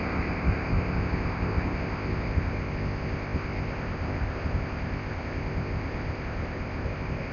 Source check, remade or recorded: remade